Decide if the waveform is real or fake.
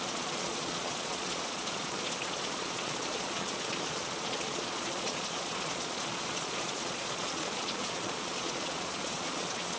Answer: fake